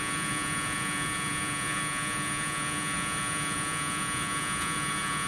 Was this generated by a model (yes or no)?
yes